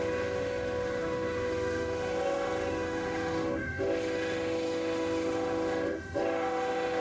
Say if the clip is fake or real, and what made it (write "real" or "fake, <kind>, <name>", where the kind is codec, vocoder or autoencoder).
fake, autoencoder, DAC-VAE